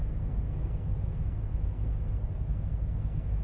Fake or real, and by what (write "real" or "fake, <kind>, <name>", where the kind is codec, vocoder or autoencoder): fake, codec, SNAC